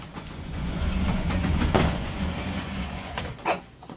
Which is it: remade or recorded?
remade